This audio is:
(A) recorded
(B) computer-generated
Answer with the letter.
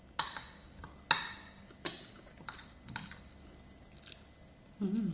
A